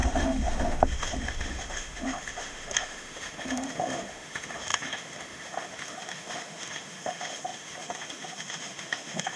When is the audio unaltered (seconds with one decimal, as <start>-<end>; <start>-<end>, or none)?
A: none